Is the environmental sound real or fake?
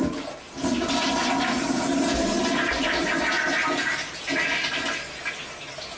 real